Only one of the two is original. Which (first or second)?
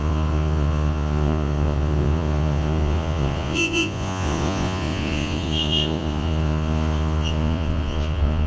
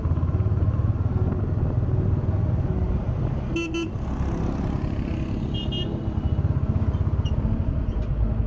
second